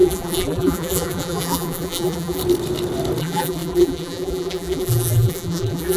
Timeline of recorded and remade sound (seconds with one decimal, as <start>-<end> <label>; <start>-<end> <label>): 0.0-2.4 remade; 2.4-3.2 recorded; 3.2-6.0 remade

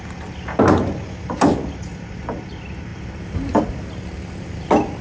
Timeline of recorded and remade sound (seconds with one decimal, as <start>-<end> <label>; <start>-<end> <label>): 0.0-5.0 recorded